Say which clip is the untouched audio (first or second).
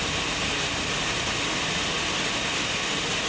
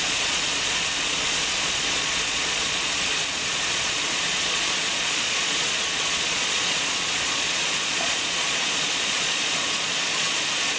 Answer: first